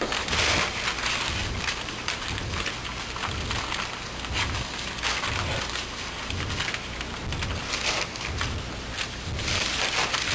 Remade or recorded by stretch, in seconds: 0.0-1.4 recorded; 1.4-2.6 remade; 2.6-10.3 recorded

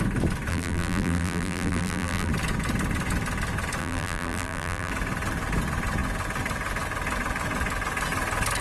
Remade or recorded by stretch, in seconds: 0.0-0.5 recorded; 0.5-2.3 remade; 2.3-3.8 recorded; 3.8-4.9 remade; 4.9-8.6 recorded

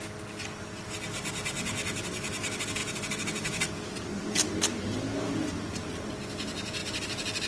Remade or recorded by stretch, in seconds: 0.0-2.8 recorded; 2.8-4.8 remade; 4.8-6.8 recorded; 6.8-7.5 remade

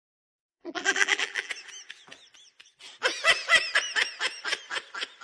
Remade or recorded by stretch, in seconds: 0.0-1.5 remade; 1.5-5.2 recorded

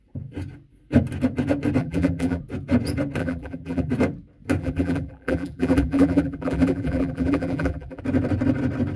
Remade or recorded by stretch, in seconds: 0.0-1.8 recorded; 1.8-2.4 remade; 2.4-3.2 recorded; 3.2-3.9 remade; 3.9-4.6 recorded; 4.6-8.0 remade; 8.0-9.0 recorded